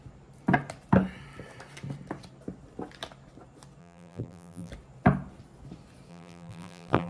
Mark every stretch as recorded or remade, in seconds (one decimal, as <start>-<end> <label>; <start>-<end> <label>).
0.0-3.8 recorded; 3.8-4.7 remade; 4.7-6.1 recorded; 6.1-7.1 remade